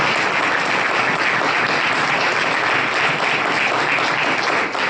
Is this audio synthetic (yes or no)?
no